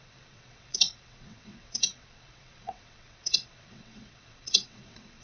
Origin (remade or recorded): remade